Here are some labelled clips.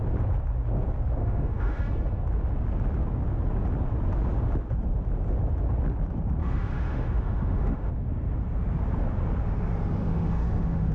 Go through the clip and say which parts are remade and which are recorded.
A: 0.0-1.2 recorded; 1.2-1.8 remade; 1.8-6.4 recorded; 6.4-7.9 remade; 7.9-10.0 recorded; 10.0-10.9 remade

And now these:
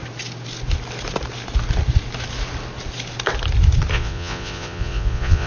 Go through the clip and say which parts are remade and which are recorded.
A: 0.0-3.9 recorded; 3.9-5.5 remade

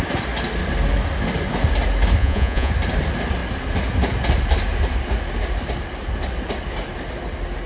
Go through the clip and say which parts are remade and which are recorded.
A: 0.0-2.2 recorded; 2.2-2.7 remade; 2.7-7.7 recorded